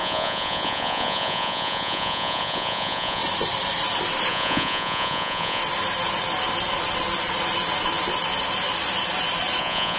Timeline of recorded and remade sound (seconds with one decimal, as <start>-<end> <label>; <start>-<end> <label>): 0.0-3.2 remade; 3.2-4.3 recorded; 4.3-5.6 remade; 5.6-9.6 recorded; 9.6-10.0 remade